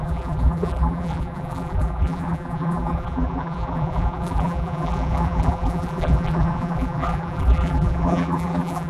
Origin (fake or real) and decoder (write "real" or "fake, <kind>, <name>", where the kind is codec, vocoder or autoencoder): fake, vocoder, BigVGAN v2